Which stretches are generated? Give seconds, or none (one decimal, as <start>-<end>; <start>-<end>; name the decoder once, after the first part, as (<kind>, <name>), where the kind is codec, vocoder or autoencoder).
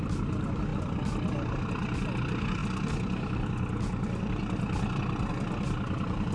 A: none